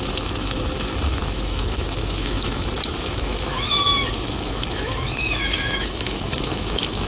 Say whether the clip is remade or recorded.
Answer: remade